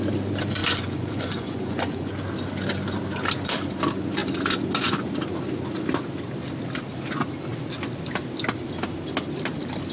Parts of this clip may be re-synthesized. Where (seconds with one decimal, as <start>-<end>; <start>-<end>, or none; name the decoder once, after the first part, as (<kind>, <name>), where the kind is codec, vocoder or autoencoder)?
0.6-2.1 (vocoder, Vocos)